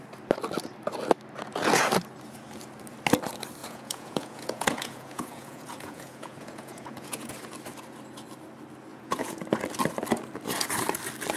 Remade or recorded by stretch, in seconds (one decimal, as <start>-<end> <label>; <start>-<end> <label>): 0.0-3.6 recorded; 3.6-7.3 remade; 7.3-8.9 recorded; 8.9-9.4 remade; 9.4-11.4 recorded